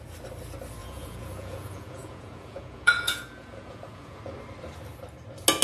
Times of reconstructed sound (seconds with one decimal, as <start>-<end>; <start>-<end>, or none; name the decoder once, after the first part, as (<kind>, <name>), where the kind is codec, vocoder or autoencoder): 0.8-4.2 (vocoder, Vocos)